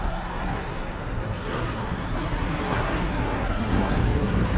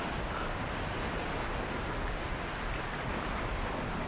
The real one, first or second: second